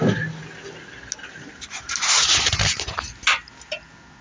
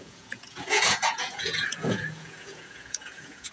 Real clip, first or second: first